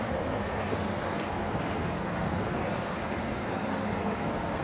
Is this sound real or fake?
fake